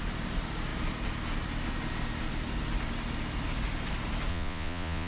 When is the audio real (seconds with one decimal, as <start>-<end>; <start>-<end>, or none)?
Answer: 0.0-4.3